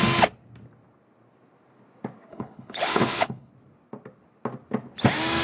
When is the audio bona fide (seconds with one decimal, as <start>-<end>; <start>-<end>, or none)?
0.0-2.3; 3.5-5.4

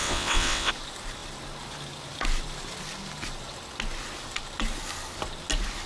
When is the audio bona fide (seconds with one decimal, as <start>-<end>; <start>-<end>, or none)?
0.7-5.9

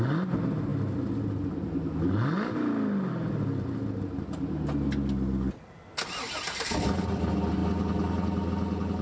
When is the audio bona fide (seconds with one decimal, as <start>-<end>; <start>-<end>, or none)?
0.0-9.0